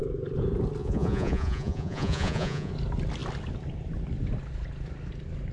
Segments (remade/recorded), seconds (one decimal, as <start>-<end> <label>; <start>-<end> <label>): 0.0-0.8 recorded; 0.8-2.7 remade; 2.7-5.5 recorded